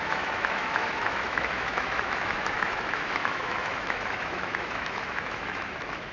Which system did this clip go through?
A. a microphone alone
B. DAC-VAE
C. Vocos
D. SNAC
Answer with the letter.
B